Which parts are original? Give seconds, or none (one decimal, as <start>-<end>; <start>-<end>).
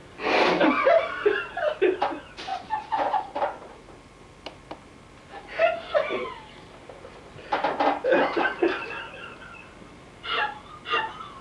0.0-2.5; 3.6-11.4